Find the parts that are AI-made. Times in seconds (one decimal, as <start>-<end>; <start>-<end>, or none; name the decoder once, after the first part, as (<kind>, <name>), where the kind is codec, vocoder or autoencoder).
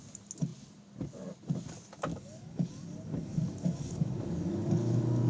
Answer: 2.1-5.3 (codec, DAC)